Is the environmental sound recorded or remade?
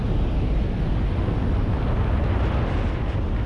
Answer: recorded